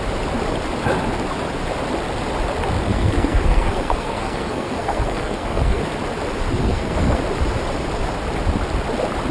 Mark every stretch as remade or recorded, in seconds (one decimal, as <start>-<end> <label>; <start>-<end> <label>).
0.0-2.9 recorded; 2.9-5.8 remade; 5.8-6.6 recorded; 6.6-7.2 remade; 7.2-9.3 recorded